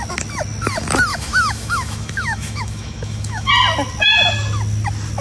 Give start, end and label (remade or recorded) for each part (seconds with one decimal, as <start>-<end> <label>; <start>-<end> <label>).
0.0-1.1 recorded; 1.1-3.5 remade; 3.5-5.2 recorded